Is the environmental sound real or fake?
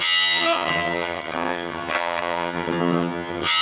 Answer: fake